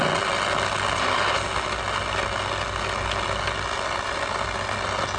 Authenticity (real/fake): real